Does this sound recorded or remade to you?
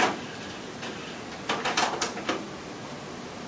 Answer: recorded